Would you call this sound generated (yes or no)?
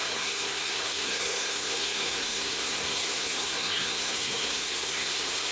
yes